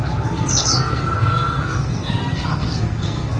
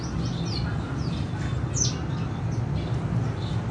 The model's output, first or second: first